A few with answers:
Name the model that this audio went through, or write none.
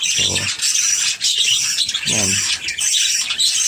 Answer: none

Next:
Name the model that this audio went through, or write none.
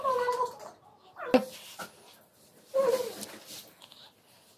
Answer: none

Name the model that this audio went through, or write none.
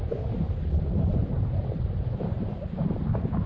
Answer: none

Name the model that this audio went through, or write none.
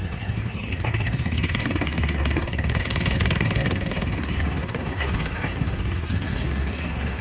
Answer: codec, SNAC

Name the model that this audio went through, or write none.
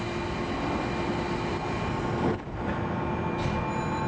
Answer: none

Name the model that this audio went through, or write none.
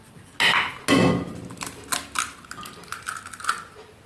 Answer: none